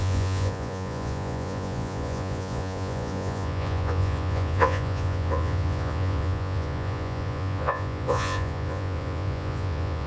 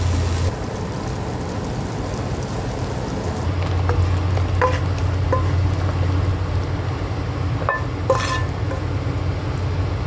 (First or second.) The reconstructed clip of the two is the first